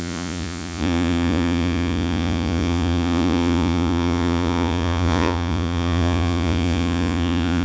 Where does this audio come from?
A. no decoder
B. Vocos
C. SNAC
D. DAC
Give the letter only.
B